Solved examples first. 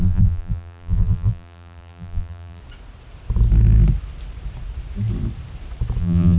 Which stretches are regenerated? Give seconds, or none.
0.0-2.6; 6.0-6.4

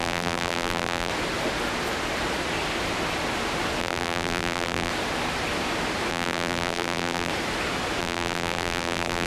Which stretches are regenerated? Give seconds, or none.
0.0-1.1; 3.8-4.9; 6.1-7.3; 8.0-9.3

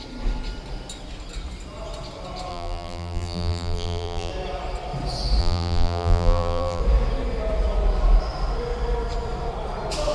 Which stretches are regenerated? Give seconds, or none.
2.5-4.3; 5.4-6.8